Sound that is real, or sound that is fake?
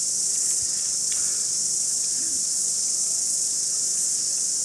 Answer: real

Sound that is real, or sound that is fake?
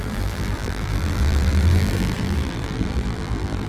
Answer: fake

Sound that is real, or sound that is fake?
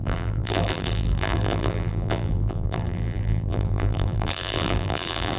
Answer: fake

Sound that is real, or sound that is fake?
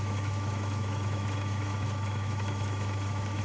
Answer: fake